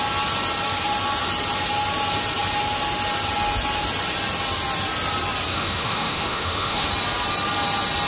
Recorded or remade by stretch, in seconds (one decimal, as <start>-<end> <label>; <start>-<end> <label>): 0.0-5.5 recorded; 5.5-6.9 remade; 6.9-8.1 recorded